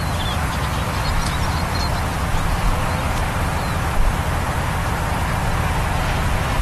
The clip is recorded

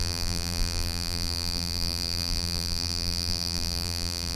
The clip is remade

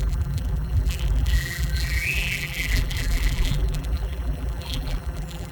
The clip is remade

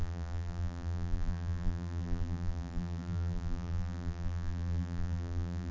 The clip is remade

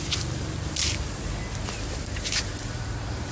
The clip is recorded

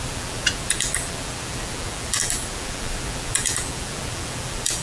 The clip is remade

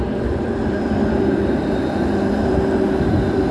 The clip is remade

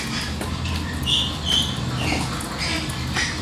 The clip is recorded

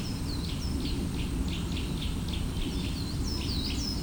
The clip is recorded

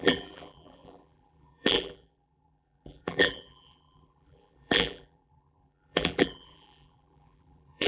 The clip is remade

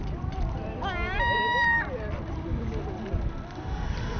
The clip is remade